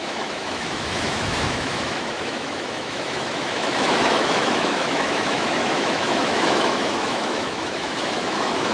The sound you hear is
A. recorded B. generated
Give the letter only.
B